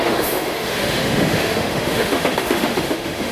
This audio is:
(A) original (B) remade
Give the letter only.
B